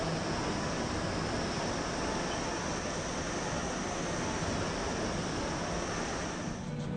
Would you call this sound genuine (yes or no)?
yes